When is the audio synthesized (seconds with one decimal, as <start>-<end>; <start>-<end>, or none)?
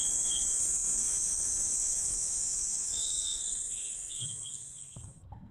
0.0-5.5